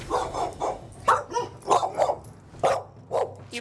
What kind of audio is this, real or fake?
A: real